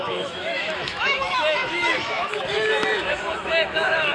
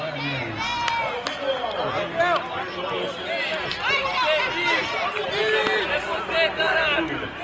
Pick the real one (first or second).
second